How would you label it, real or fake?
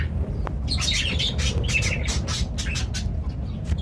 real